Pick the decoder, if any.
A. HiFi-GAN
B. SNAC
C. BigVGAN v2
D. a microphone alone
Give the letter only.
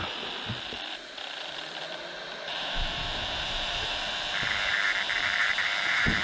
C